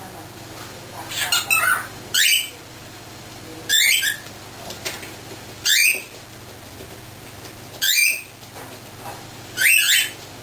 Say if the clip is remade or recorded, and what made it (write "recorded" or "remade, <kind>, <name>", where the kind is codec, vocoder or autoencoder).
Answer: recorded